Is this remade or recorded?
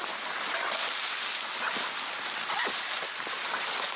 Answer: recorded